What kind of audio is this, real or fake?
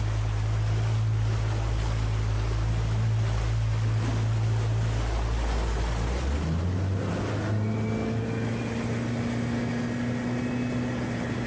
real